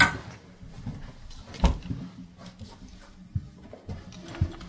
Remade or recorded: recorded